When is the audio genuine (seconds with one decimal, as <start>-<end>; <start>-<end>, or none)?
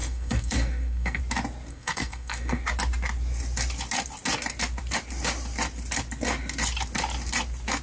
1.2-1.7; 2.6-7.8